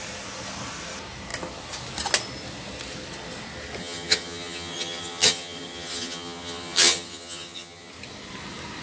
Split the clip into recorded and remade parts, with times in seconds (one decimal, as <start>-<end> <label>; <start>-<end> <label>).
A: 0.0-3.8 recorded; 3.8-7.9 remade; 7.9-8.8 recorded